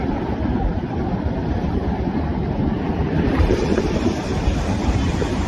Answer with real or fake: fake